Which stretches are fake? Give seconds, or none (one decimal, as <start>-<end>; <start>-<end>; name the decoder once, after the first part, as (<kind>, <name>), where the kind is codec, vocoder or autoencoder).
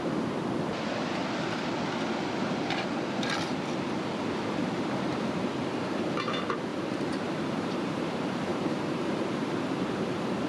6.7-7.9 (vocoder, BigVGAN v2); 8.5-9.3